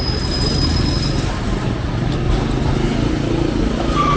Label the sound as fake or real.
real